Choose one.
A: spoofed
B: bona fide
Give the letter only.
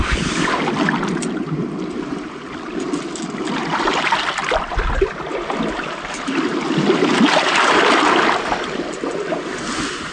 B